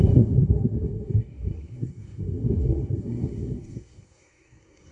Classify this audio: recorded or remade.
remade